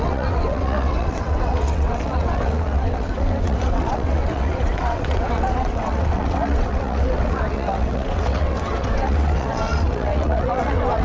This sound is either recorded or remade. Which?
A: remade